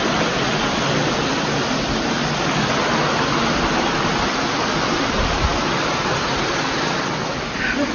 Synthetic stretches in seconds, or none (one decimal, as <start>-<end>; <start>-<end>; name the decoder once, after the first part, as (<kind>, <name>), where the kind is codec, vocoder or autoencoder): none